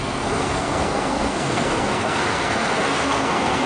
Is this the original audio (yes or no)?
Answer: no